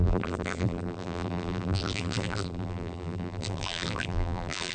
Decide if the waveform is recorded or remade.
remade